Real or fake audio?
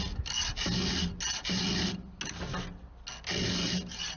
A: real